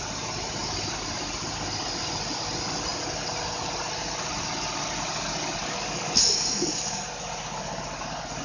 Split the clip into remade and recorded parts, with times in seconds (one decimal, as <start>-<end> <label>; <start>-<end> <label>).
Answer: 0.0-5.6 recorded; 5.6-7.2 remade; 7.2-8.4 recorded

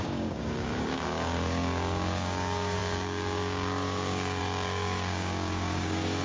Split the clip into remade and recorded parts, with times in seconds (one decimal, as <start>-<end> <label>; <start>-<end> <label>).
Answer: 0.0-6.2 remade

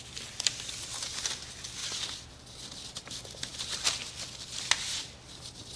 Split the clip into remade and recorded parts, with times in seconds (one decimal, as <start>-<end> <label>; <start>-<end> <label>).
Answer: 0.0-5.8 recorded

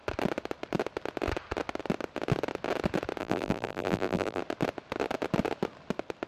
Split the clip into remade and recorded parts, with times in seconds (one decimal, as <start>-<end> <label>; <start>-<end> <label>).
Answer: 0.0-3.2 recorded; 3.2-4.4 remade; 4.4-6.3 recorded